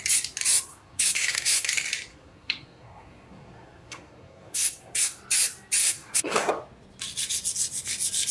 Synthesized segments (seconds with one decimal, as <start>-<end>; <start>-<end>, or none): 0.7-1.7; 2.1-5.2; 5.8-6.5